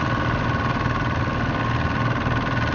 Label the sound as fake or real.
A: real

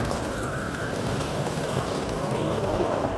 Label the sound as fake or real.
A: fake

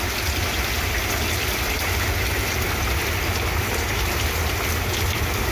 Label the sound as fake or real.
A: real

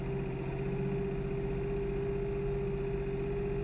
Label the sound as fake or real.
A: real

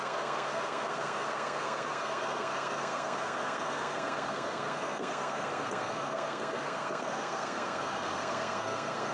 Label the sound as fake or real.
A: fake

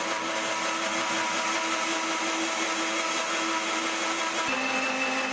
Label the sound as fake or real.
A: real